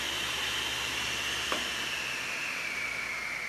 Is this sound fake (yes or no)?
no